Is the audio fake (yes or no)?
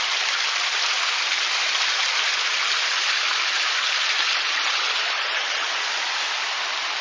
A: no